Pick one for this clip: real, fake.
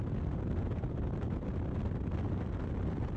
real